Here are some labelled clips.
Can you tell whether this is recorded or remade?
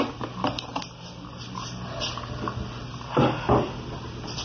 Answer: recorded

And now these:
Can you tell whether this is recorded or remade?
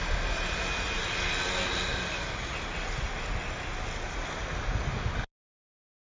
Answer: recorded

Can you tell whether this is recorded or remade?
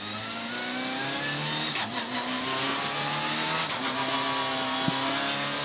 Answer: recorded